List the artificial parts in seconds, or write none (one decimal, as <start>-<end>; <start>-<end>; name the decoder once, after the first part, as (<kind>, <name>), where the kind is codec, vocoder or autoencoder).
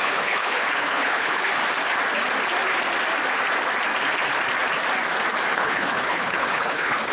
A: 0.0-1.6 (codec, HILCodec); 5.5-7.1